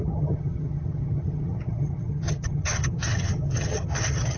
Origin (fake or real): fake